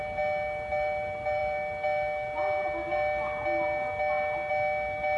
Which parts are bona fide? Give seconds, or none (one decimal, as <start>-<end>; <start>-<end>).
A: 0.0-5.2